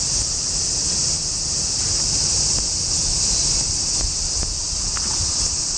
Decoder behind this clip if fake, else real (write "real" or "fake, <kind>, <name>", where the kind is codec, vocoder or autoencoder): real